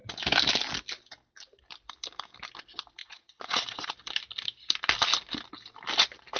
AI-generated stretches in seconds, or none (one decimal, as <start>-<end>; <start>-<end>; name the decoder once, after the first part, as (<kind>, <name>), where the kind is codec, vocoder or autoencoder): 3.0-3.9 (vocoder, WaveNeXt)